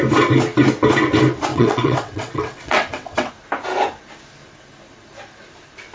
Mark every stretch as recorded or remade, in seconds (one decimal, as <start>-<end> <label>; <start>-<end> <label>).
0.0-1.5 recorded; 1.5-3.3 remade; 3.3-5.9 recorded